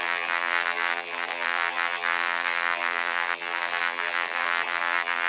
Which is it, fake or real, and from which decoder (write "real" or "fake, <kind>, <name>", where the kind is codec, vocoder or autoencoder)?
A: fake, vocoder, BigVGAN v2